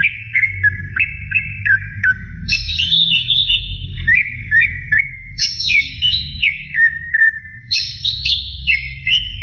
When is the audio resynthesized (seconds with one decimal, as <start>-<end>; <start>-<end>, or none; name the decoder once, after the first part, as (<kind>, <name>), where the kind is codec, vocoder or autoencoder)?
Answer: 0.0-9.4 (codec, SNAC)